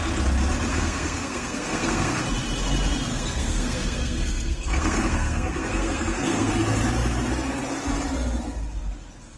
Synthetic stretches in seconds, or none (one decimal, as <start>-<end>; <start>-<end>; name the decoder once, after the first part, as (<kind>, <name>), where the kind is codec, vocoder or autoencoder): 0.7-2.2 (codec, SNAC); 3.1-6.5